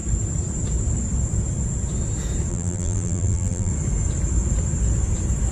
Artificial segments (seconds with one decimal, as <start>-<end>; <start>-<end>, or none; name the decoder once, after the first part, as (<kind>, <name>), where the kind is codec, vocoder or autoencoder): 2.5-3.7 (vocoder, BigVGAN v2)